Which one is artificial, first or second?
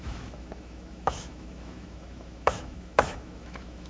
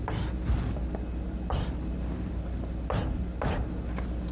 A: first